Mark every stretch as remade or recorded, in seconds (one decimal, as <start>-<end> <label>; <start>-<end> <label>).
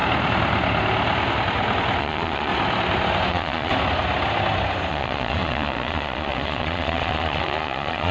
0.0-2.0 recorded; 2.0-2.5 remade; 2.5-3.3 recorded; 3.3-3.7 remade; 3.7-4.9 recorded; 4.9-8.1 remade